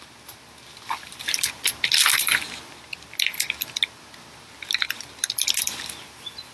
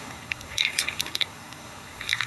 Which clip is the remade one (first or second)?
second